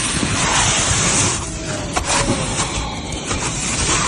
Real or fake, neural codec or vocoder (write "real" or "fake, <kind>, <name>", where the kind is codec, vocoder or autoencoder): fake, vocoder, BigVGAN v2